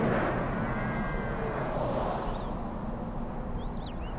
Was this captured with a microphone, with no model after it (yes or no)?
yes